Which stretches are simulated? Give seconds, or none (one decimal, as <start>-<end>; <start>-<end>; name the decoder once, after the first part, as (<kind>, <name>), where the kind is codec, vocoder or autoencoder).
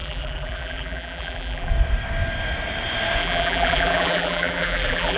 0.0-1.7 (vocoder, BigVGAN v2); 3.2-5.2